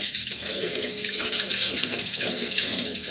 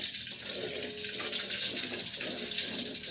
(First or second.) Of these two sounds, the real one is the second